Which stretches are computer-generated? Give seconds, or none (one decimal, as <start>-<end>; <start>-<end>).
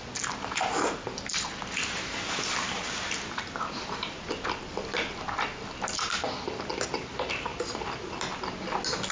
none